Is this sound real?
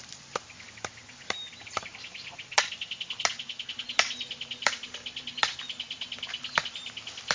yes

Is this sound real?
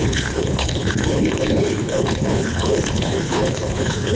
no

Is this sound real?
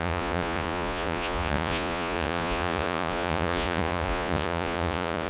no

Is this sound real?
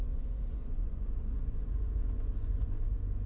no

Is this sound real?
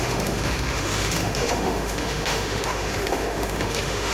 no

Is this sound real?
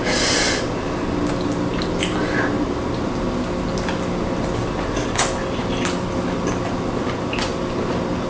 yes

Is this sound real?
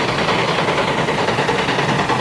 yes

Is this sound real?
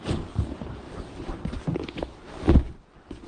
yes